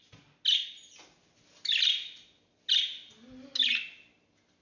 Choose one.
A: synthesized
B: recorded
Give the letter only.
B